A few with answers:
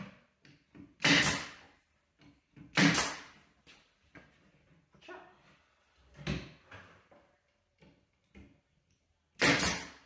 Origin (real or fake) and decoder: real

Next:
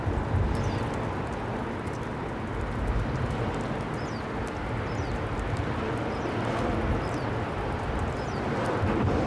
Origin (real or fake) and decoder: real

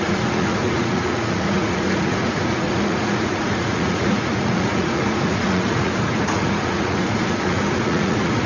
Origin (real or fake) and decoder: fake, vocoder, Vocos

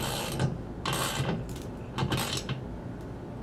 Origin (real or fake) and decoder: real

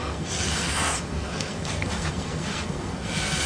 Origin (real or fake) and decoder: fake, codec, SNAC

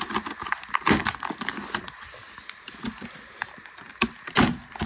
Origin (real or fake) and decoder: real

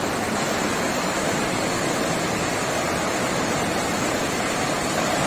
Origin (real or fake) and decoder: real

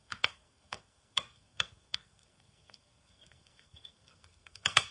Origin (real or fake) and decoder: fake, codec, SNAC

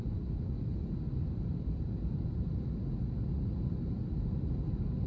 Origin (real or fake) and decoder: real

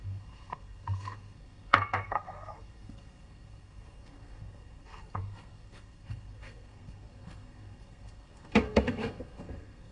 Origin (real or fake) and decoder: fake, codec, SNAC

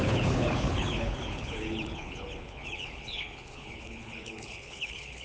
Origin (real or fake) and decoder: fake, codec, HILCodec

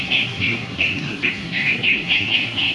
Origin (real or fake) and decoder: fake, codec, SNAC